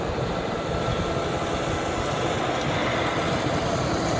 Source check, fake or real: real